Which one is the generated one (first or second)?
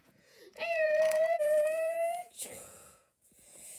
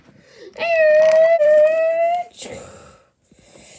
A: first